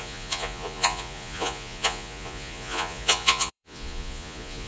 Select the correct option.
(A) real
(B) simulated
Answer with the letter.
B